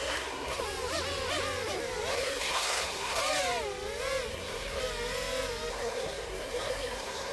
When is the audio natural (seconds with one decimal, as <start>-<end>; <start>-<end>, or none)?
0.6-2.1; 3.2-4.3; 4.8-5.7